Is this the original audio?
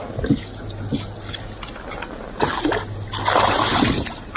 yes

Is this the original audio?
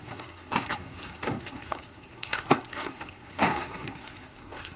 no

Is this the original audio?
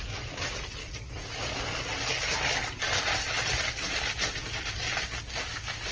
yes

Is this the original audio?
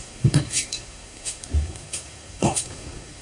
no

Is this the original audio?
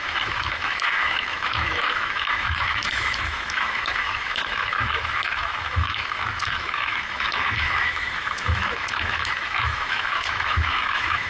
no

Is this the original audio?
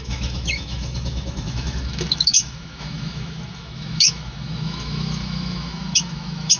no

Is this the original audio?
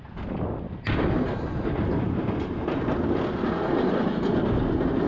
yes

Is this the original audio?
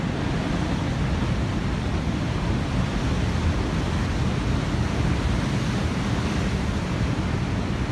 yes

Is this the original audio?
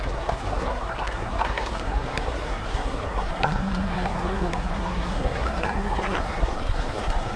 no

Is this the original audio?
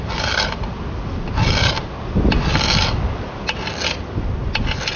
yes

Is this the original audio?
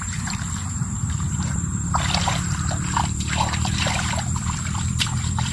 no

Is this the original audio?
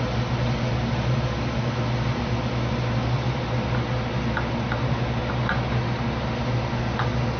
yes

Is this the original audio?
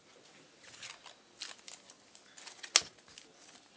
yes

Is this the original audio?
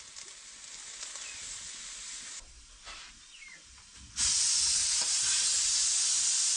yes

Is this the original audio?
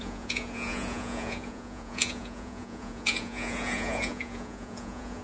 no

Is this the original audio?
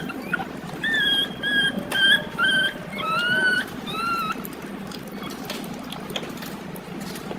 yes